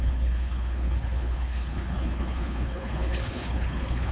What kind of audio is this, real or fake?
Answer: fake